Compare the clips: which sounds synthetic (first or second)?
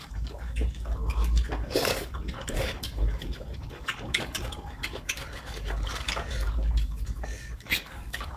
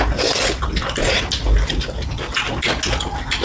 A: first